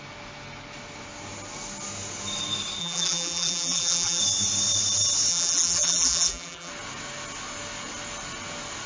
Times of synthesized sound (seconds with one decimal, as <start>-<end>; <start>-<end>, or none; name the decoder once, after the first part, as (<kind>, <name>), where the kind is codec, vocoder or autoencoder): 2.8-4.2 (vocoder, BigVGAN v2); 5.3-6.7

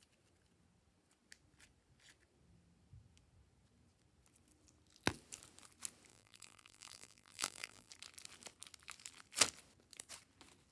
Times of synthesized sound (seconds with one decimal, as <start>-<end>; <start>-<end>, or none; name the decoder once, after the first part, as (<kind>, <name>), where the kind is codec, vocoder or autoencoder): 6.1-7.9 (vocoder, BigVGAN v2)

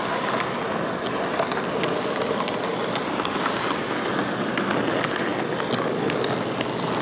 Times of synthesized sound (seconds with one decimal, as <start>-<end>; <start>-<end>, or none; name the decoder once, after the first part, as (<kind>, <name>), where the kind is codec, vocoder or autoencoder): 5.3-5.9 (vocoder, BigVGAN v2)

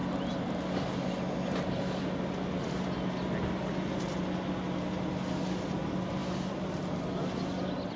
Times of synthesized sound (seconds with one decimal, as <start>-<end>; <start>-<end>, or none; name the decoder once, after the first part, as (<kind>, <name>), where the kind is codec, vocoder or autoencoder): 6.2-7.1 (vocoder, BigVGAN v2)

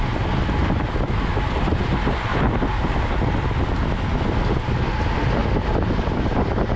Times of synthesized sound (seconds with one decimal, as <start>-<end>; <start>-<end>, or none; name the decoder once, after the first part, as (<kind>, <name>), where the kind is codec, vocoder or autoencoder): 0.0-0.6 (vocoder, BigVGAN v2); 1.7-2.3; 4.8-5.4; 6.1-6.8

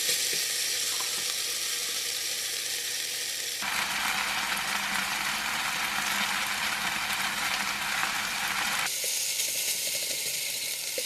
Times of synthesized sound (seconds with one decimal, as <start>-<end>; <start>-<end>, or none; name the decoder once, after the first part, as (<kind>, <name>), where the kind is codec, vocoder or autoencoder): 1.8-2.5 (vocoder, BigVGAN v2); 8.0-8.8

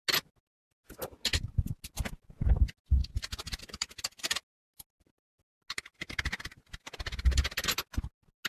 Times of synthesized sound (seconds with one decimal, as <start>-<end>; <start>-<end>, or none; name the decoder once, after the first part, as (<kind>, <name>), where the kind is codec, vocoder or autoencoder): none